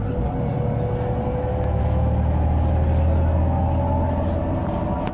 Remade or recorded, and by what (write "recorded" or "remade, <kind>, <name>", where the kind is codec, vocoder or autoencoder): recorded